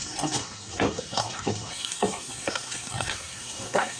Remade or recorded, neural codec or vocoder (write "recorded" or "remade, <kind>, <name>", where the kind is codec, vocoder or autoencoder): remade, codec, SNAC